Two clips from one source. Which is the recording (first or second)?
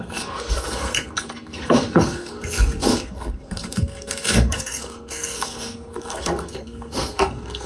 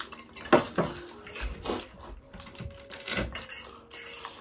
second